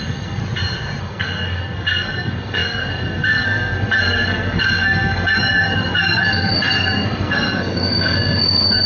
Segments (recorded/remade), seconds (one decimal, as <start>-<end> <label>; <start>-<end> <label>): 0.0-0.4 remade; 0.4-1.0 recorded; 1.0-8.9 remade